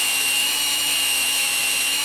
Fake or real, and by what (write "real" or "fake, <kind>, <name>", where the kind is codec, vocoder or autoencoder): fake, autoencoder, DAC-VAE